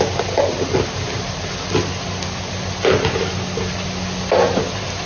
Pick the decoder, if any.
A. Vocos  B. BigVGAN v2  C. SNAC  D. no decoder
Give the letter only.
D